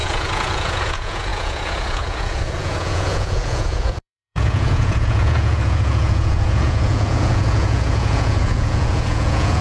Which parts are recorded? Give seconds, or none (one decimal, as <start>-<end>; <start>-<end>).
none